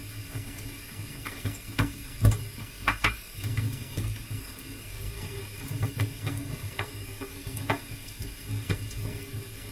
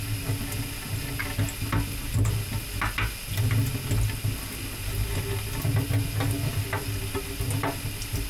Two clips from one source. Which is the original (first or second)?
second